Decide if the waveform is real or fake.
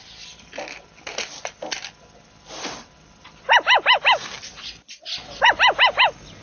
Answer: real